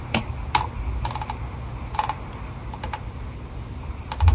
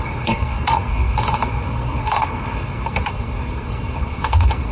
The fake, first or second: second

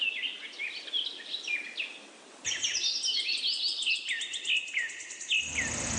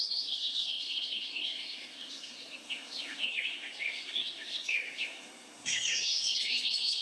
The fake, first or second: second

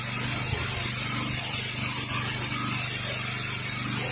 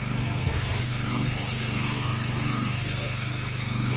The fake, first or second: second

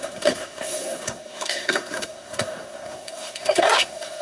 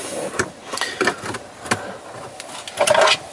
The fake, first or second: first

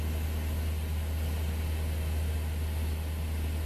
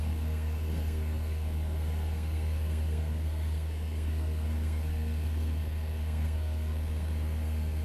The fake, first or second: second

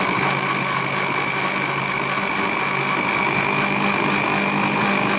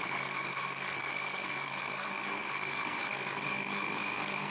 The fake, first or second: second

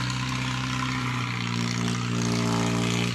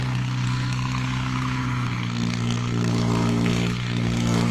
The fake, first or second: second